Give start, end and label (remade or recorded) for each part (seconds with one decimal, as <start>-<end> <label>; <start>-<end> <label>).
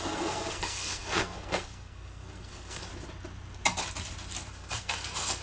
0.0-2.9 remade; 2.9-4.5 recorded; 4.5-5.4 remade